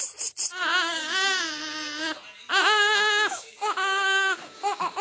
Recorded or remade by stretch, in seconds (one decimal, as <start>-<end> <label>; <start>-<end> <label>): 0.0-0.7 recorded; 0.7-1.4 remade; 1.4-2.5 recorded; 2.5-5.0 remade